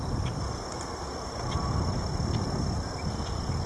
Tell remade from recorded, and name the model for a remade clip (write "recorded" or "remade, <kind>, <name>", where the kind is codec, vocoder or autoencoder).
recorded